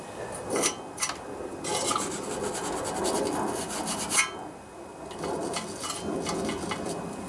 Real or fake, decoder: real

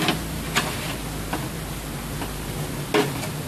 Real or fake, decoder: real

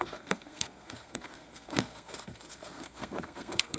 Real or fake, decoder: fake, codec, SNAC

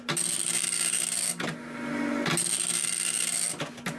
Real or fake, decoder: real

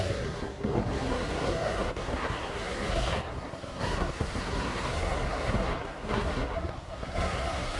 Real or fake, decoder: fake, codec, SNAC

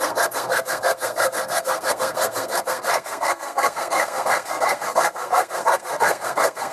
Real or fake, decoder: fake, codec, SNAC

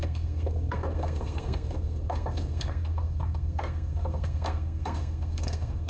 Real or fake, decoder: fake, codec, SNAC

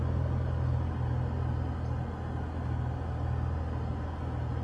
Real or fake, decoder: real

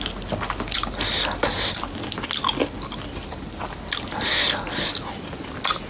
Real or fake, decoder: real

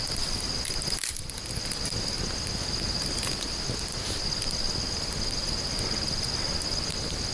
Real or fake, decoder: real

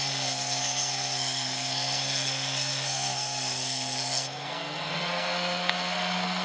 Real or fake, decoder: fake, codec, SNAC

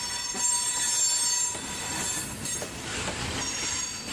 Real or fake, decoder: real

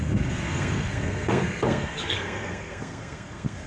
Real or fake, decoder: fake, codec, SNAC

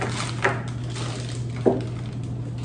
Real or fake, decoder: real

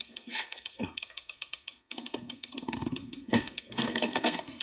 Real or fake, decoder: fake, codec, SNAC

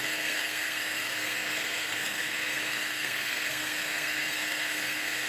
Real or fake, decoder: fake, codec, SNAC